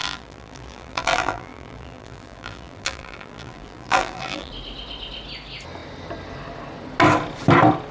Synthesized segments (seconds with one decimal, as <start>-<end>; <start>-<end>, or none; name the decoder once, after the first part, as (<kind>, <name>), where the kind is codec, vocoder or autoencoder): 0.0-4.5 (vocoder, BigVGAN v2)